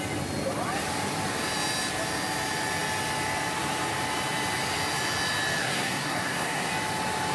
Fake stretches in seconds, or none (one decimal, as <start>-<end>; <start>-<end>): 5.6-6.7